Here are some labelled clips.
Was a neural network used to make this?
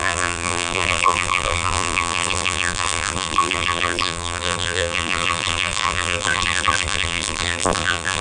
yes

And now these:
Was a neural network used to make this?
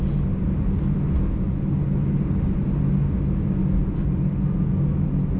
no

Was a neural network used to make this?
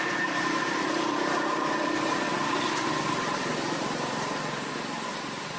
yes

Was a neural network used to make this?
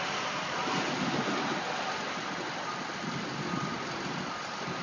no